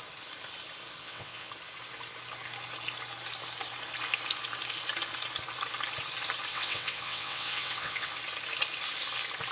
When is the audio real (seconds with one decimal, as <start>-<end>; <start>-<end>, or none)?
0.0-1.0; 1.5-6.5; 8.1-9.5